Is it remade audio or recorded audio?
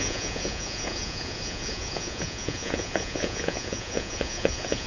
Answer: remade